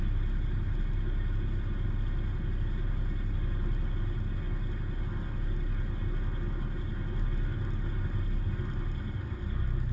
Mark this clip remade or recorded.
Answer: recorded